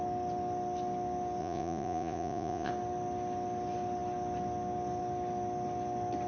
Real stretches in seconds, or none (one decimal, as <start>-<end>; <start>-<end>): 0.0-1.4; 2.7-6.3